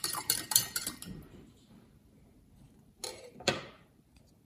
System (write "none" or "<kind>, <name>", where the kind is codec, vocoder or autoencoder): vocoder, BigVGAN v2